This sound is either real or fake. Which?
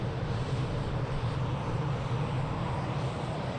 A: fake